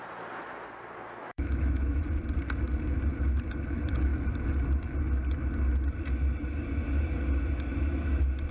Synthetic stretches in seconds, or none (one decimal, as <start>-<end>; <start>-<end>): 1.2-2.0